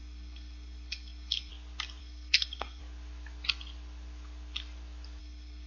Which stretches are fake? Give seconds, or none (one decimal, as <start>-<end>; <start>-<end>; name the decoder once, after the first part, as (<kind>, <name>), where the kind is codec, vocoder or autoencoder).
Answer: 0.0-1.5 (codec, SNAC); 2.0-2.8; 5.2-5.7